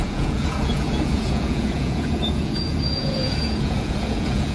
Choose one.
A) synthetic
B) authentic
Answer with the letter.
A